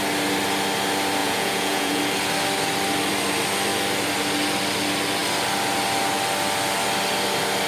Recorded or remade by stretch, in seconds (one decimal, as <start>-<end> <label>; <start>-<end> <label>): 0.0-1.2 recorded; 1.2-2.0 remade; 2.0-7.7 recorded